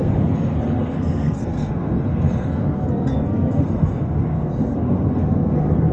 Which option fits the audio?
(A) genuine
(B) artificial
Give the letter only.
B